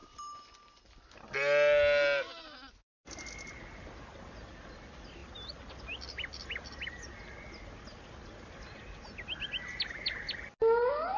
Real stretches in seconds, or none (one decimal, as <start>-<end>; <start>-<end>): 0.0-11.2